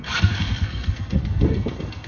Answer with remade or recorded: remade